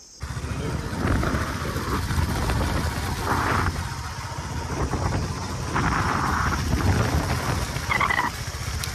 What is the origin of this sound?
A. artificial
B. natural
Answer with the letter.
B